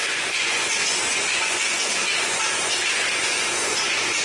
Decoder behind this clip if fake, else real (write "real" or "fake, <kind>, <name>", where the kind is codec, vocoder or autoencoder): fake, vocoder, Vocos